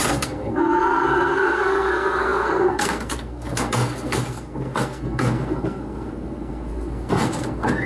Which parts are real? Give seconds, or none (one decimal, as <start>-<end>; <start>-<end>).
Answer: none